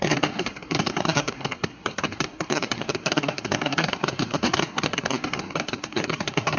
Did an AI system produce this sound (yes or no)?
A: yes